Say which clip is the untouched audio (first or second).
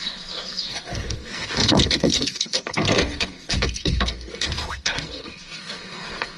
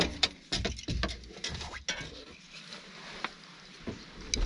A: second